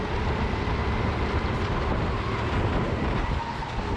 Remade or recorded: recorded